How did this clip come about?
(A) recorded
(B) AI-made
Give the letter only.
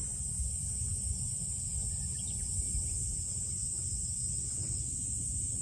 A